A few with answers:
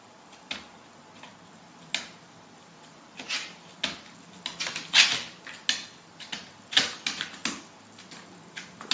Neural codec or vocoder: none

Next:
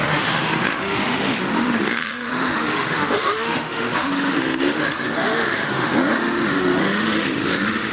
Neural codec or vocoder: autoencoder, DAC-VAE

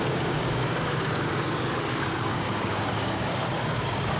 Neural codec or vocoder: codec, DAC